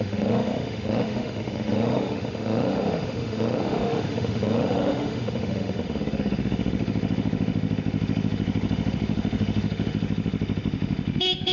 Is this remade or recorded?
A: remade